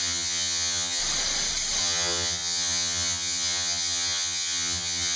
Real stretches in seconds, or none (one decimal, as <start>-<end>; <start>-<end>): 1.0-1.8